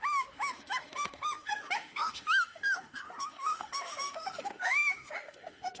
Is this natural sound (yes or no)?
no